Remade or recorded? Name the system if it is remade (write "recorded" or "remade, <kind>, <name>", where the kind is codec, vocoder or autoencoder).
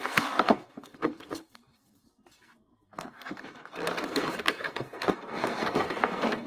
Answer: remade, codec, SNAC